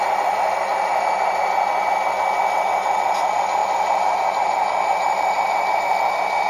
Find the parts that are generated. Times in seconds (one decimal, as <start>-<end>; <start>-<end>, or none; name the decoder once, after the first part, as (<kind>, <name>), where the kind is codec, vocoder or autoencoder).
0.7-1.5 (vocoder, BigVGAN v2); 3.6-5.8